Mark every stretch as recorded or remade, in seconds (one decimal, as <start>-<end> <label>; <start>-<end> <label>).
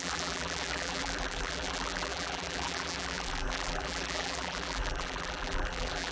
0.0-6.1 remade